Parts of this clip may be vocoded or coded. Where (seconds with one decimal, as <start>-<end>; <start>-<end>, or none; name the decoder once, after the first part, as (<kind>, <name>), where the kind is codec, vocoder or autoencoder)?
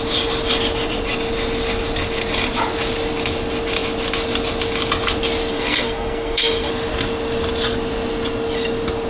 5.5-6.7 (codec, SNAC)